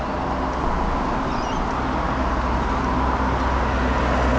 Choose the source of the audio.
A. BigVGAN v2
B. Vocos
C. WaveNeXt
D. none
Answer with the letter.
D